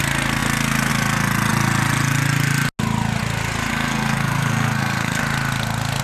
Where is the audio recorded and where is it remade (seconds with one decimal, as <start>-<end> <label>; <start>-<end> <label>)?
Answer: 0.0-3.7 recorded; 3.7-5.2 remade; 5.2-6.0 recorded